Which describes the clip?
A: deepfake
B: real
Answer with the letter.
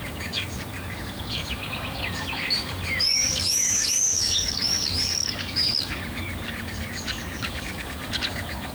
A